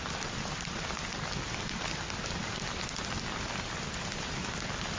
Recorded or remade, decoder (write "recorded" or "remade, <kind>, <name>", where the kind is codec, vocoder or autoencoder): recorded